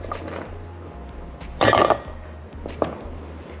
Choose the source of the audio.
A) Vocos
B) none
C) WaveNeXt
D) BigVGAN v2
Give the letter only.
B